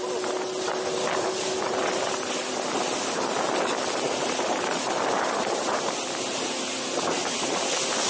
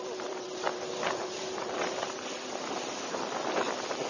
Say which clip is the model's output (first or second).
second